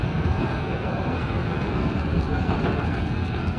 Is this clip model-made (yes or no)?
yes